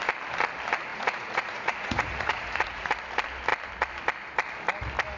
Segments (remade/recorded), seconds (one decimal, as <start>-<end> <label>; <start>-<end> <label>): 0.0-0.9 recorded; 0.9-3.0 remade; 3.0-5.2 recorded